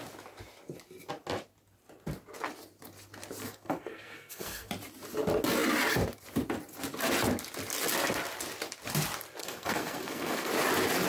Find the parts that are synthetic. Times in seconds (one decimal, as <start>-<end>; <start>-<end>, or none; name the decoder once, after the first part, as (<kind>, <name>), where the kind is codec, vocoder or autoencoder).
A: 3.4-4.7 (codec, SNAC); 9.4-10.5